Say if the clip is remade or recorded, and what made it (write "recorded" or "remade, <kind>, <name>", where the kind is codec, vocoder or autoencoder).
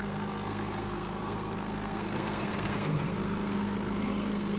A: remade, codec, SNAC